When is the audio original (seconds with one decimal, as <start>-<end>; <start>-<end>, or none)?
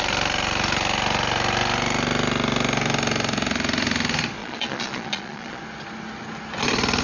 0.0-4.4; 5.6-7.0